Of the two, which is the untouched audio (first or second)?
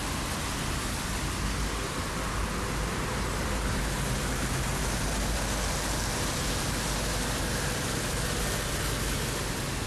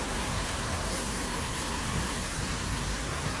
first